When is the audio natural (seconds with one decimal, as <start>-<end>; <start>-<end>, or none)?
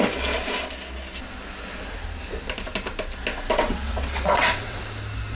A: 0.0-3.5; 4.8-5.3